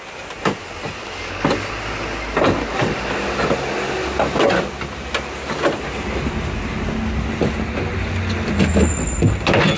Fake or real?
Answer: real